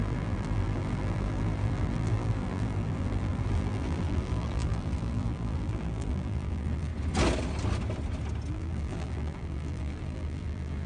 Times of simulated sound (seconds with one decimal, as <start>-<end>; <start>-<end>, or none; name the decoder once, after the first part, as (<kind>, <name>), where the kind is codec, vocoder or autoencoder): 0.0-6.9 (vocoder, BigVGAN v2); 8.5-10.9